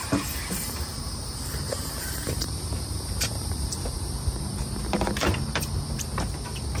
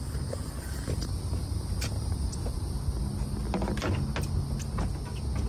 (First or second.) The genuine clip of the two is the second